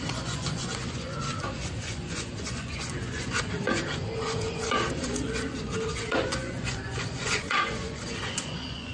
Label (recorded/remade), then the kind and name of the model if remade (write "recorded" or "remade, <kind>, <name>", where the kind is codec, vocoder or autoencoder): remade, vocoder, Vocos